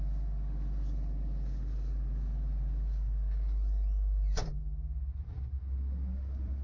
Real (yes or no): yes